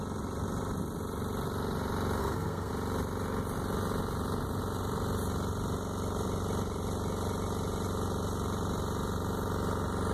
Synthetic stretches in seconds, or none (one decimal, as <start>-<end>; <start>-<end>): 2.2-2.7